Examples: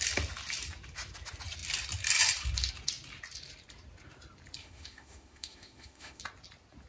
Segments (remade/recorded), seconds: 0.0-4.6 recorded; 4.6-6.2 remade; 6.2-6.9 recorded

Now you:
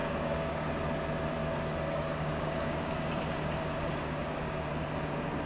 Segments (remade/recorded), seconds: 0.0-0.7 remade; 0.7-1.4 recorded; 1.4-4.7 remade; 4.7-5.5 recorded

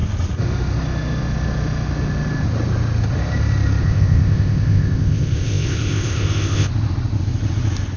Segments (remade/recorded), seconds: 0.0-3.8 recorded; 3.8-6.7 remade; 6.7-8.0 recorded

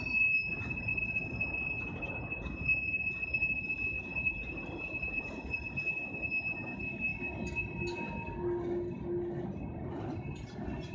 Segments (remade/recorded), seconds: 0.0-0.9 remade; 0.9-1.7 recorded; 1.7-7.1 remade; 7.1-9.7 recorded; 9.7-10.9 remade

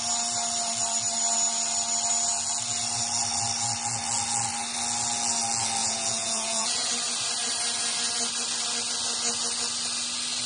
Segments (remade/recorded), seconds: 0.0-5.8 recorded; 5.8-6.9 remade; 6.9-10.5 recorded

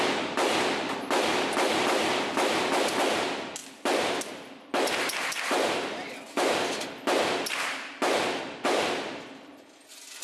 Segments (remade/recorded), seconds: 0.0-10.2 recorded

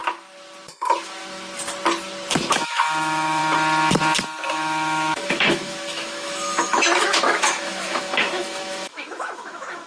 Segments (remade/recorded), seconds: 0.0-2.5 recorded; 2.5-3.4 remade; 3.4-4.5 recorded; 4.5-9.9 remade